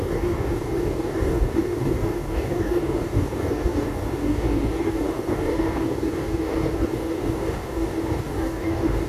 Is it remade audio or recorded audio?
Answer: remade